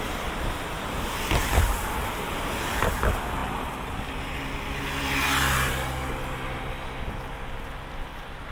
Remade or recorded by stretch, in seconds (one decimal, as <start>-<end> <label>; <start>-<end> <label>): 0.0-8.5 recorded